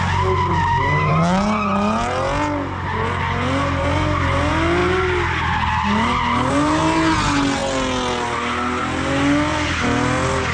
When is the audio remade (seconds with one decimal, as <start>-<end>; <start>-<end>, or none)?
none